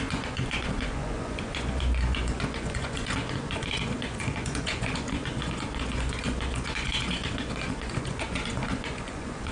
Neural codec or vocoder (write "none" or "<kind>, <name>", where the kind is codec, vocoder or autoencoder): vocoder, Vocos